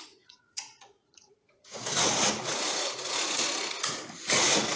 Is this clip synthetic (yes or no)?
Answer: yes